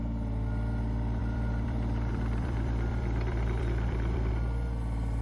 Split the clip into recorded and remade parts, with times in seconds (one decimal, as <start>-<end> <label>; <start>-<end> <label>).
0.0-1.2 recorded; 1.2-4.3 remade; 4.3-5.2 recorded